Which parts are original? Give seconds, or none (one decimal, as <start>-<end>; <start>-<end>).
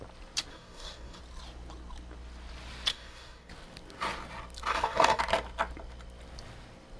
0.0-0.5; 1.2-2.9; 3.5-4.7; 5.2-7.0